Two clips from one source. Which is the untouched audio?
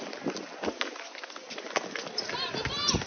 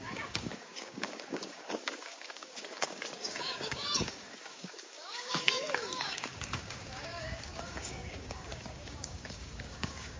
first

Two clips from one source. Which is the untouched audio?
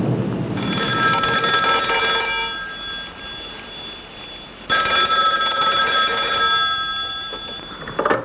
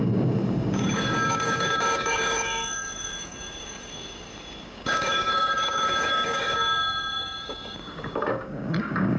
first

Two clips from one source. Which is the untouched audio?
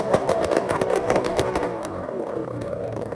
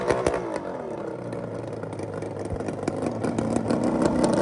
second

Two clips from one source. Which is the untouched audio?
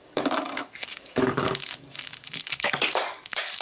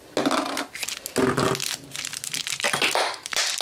second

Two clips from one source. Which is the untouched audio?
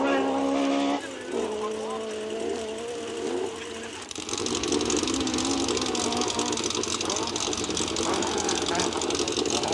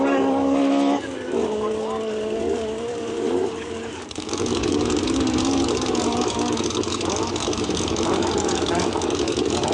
first